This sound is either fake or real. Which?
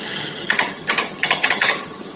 fake